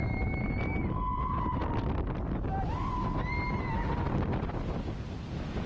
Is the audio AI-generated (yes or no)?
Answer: no